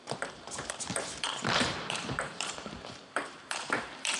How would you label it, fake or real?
fake